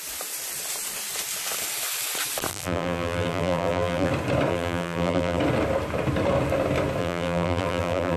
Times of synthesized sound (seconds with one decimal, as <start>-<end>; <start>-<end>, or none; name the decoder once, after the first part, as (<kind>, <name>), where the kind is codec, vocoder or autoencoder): 2.5-4.1 (vocoder, BigVGAN v2); 4.5-5.4; 7.0-8.2